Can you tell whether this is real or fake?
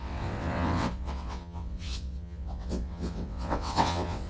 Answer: fake